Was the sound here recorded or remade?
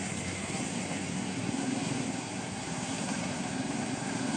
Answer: remade